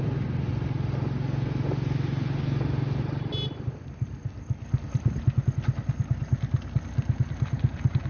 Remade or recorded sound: recorded